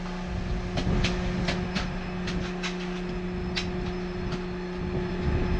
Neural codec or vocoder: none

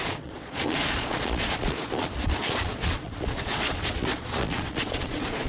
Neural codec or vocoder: vocoder, Vocos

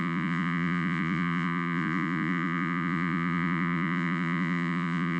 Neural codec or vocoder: vocoder, Vocos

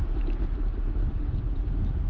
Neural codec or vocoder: none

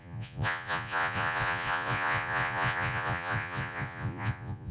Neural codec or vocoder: vocoder, Vocos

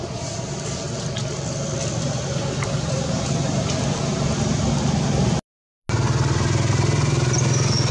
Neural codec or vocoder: none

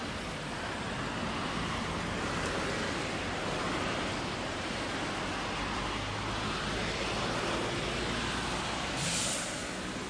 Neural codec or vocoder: none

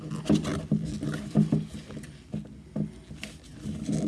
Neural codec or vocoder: none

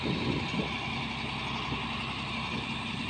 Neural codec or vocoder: none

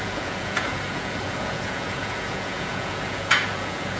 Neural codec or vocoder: vocoder, Vocos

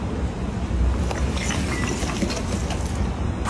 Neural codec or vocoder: none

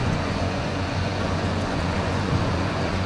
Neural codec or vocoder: vocoder, Vocos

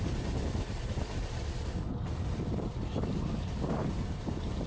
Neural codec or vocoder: none